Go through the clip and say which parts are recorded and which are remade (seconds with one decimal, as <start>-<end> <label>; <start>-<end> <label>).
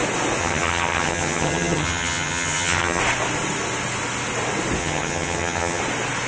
0.0-0.4 recorded; 0.4-3.0 remade; 3.0-4.8 recorded; 4.8-5.8 remade; 5.8-6.3 recorded